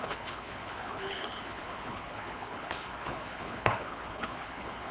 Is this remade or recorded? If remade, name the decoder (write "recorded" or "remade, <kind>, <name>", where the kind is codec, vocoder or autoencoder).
remade, codec, HILCodec